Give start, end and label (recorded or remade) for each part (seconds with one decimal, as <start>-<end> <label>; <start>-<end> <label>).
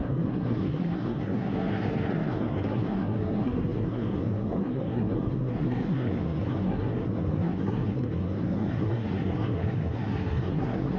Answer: 0.0-11.0 remade